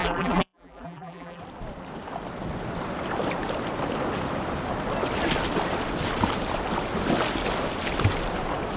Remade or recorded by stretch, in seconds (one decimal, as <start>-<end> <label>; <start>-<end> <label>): 0.0-1.4 remade; 1.4-8.8 recorded